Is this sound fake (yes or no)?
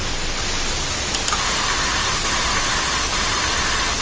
no